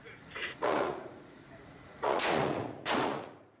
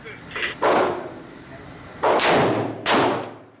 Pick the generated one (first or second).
first